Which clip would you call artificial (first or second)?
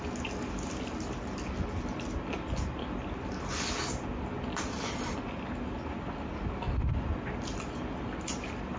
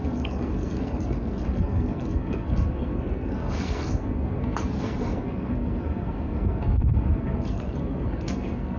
second